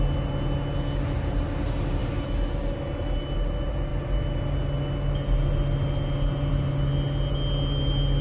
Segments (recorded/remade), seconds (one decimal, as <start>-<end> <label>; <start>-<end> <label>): 0.0-8.2 recorded

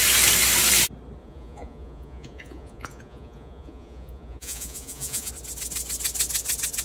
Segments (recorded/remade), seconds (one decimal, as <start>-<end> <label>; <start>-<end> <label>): 0.0-1.2 recorded; 1.2-5.3 remade; 5.3-6.8 recorded